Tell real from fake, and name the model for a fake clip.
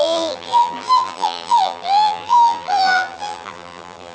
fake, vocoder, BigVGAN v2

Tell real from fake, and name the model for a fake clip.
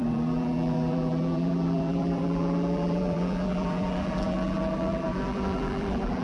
fake, vocoder, BigVGAN v2